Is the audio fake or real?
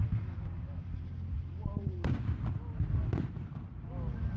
real